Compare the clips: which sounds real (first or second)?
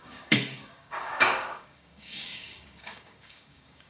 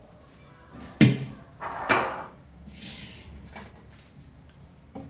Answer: second